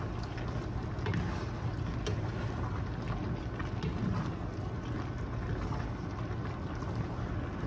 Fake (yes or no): no